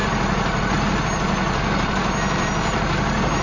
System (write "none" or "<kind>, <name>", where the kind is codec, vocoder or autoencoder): none